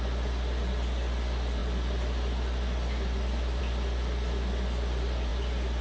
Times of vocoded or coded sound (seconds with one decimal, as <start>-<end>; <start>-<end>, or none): none

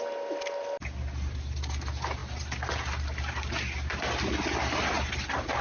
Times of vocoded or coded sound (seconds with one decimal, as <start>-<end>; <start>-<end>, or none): none

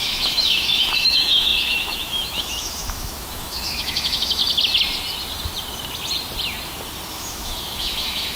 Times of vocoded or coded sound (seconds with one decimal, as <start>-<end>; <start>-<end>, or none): 0.0-4.4; 7.1-8.4

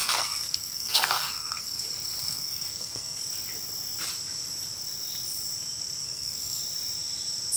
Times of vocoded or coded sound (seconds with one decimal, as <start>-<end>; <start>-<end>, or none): 0.0-1.8; 2.2-3.2; 6.0-6.6

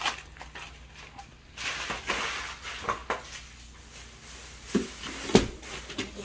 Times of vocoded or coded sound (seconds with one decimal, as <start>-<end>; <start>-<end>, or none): none